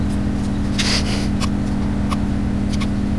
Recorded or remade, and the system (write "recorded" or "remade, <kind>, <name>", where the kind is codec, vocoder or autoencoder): recorded